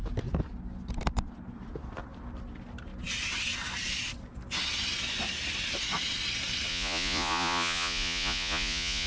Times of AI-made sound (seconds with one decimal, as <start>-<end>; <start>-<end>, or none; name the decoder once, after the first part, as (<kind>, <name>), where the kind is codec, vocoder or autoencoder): 6.7-9.1 (vocoder, Vocos)